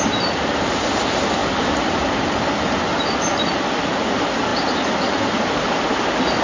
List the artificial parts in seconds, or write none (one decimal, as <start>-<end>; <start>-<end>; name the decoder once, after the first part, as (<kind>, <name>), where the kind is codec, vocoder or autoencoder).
1.4-3.5 (vocoder, BigVGAN v2); 4.5-5.8